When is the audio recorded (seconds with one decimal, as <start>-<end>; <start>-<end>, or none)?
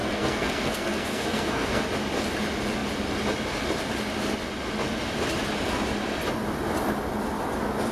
1.9-7.9